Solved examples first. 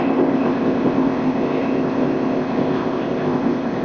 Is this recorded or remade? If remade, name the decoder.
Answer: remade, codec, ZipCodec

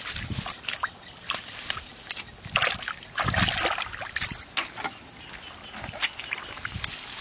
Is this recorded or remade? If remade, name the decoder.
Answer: recorded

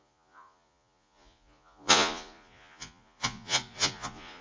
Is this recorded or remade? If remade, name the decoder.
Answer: remade, vocoder, Vocos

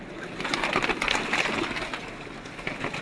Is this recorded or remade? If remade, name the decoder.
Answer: recorded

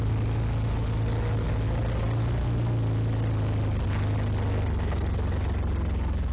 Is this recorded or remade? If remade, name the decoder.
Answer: recorded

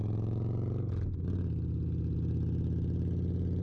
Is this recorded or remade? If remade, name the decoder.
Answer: recorded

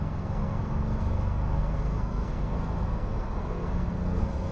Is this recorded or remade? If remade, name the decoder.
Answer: remade, codec, SNAC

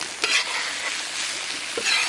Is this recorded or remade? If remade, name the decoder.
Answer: recorded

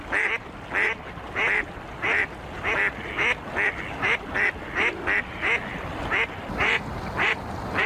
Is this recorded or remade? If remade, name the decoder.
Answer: recorded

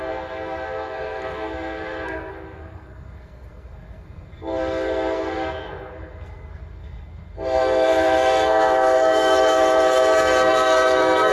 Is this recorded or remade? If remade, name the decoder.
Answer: remade, codec, SNAC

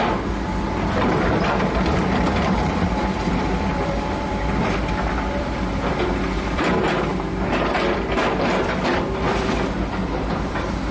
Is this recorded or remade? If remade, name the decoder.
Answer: remade, vocoder, BigVGAN v2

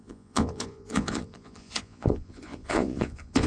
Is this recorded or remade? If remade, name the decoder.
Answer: remade, vocoder, Vocos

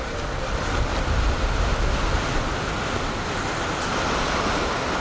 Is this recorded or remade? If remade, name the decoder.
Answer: recorded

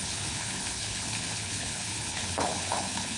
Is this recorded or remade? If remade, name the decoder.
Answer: remade, codec, HILCodec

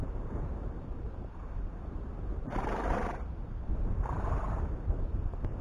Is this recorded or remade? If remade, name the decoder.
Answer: remade, vocoder, BigVGAN v2